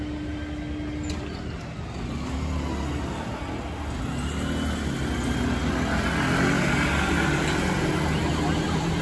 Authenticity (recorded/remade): recorded